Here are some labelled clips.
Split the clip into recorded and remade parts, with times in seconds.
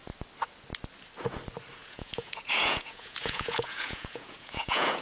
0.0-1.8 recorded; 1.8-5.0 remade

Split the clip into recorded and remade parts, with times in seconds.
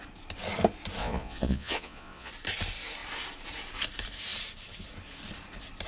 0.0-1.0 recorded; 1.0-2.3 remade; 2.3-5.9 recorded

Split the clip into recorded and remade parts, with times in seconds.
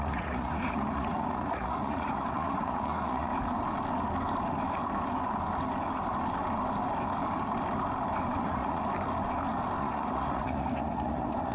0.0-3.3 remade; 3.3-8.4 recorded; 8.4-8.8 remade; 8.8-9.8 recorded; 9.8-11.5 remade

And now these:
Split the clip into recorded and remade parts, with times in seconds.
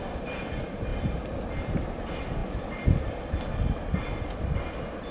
0.0-5.1 recorded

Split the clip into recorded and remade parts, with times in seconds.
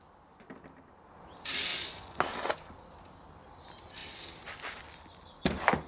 0.0-1.7 recorded; 1.7-2.2 remade; 2.2-5.9 recorded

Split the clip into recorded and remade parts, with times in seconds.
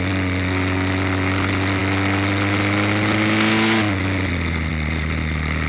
0.0-5.7 recorded